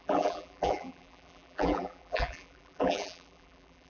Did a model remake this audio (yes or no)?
yes